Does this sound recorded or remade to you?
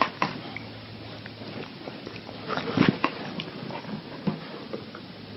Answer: recorded